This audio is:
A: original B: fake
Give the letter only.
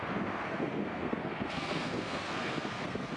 B